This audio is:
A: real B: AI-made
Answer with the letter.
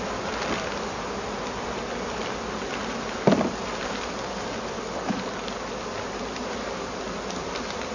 A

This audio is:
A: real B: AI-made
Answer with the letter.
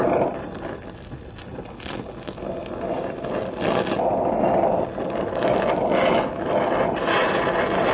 A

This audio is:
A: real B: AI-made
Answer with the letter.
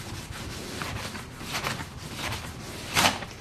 B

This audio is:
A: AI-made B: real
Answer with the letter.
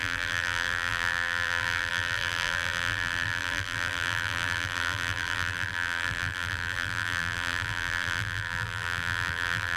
A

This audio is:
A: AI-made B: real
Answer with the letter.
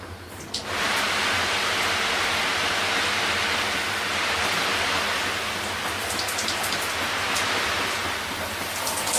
B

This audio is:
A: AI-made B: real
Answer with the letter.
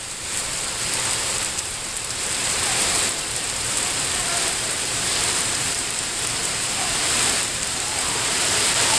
A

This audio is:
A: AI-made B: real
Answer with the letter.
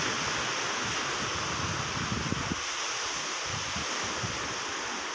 B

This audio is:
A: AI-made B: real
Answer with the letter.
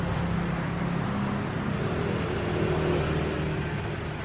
B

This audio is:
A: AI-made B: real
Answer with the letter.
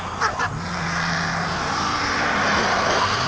B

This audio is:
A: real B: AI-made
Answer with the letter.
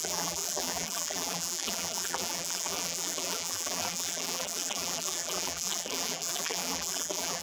B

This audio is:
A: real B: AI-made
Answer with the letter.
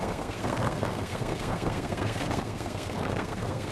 B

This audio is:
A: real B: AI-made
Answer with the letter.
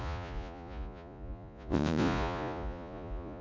B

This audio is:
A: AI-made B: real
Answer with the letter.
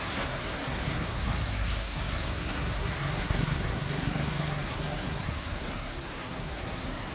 A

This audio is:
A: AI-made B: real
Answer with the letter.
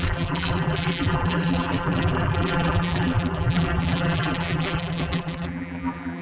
A